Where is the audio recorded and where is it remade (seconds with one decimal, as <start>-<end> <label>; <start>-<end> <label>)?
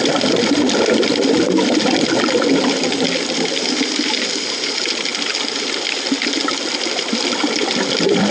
0.0-8.3 recorded